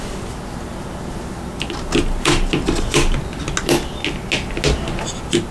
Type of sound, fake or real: real